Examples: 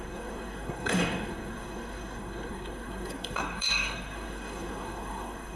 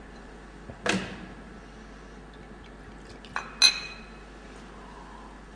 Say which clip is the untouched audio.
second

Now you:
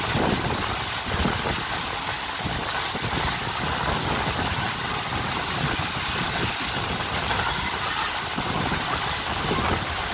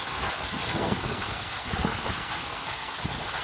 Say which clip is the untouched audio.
first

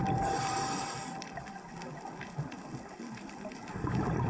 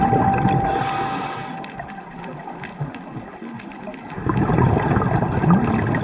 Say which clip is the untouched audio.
second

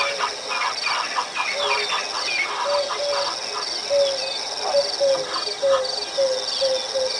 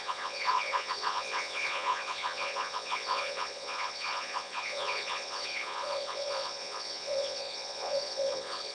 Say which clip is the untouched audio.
first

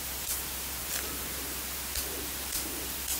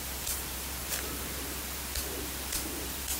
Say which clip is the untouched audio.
first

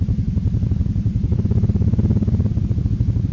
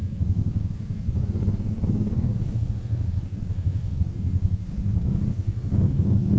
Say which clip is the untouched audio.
first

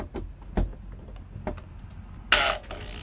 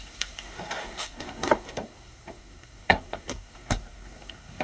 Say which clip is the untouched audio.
first